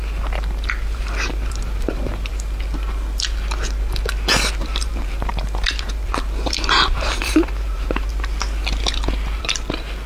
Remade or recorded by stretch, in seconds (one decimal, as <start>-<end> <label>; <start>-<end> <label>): 0.0-0.8 recorded; 0.8-2.3 remade; 2.3-4.6 recorded; 4.6-8.1 remade; 8.1-10.1 recorded